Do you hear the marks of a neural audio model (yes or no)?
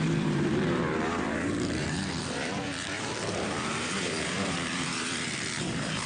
yes